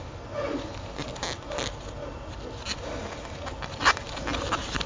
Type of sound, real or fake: real